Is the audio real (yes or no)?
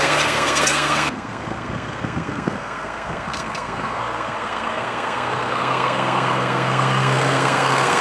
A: no